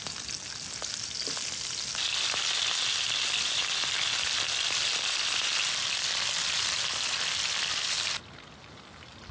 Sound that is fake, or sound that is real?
real